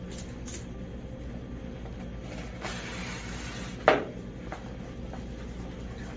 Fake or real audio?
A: real